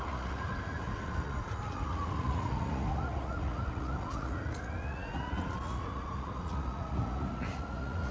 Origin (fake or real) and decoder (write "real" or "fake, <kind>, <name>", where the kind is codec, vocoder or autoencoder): fake, vocoder, Vocos